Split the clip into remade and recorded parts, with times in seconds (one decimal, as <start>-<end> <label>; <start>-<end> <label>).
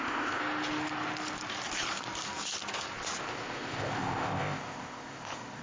0.0-0.4 remade; 0.4-3.2 recorded; 3.2-5.6 remade